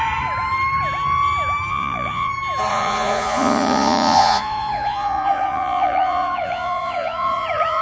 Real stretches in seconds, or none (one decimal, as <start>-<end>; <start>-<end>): 0.0-1.7; 2.3-2.7